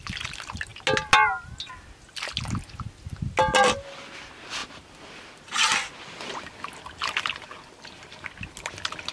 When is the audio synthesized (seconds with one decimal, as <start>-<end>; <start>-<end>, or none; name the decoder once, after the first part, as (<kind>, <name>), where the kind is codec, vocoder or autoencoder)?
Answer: none